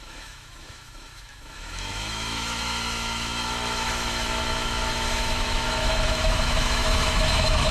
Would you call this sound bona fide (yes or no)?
no